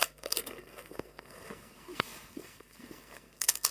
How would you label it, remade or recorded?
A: remade